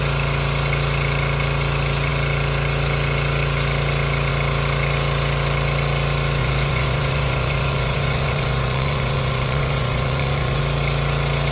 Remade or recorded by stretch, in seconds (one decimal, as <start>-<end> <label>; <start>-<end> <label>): 0.0-6.4 recorded; 6.4-10.6 remade; 10.6-11.5 recorded